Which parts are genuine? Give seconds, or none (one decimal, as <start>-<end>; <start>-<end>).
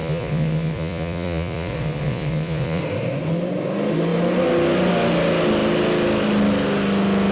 2.8-7.3